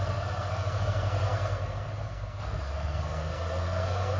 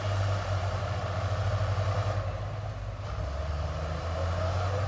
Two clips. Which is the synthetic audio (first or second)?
first